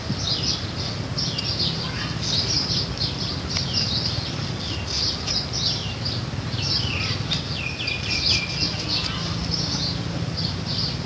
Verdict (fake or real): real